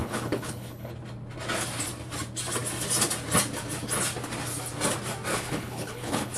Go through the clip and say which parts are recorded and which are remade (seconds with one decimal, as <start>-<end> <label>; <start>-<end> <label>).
0.0-0.9 remade; 0.9-5.3 recorded; 5.3-6.4 remade